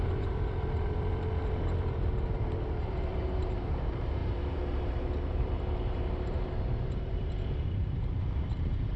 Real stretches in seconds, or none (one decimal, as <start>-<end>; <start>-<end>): none